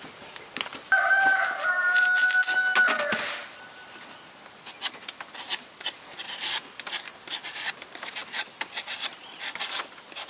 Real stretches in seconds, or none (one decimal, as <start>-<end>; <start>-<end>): 0.0-10.3